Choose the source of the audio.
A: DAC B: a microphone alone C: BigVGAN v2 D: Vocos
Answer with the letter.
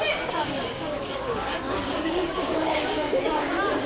A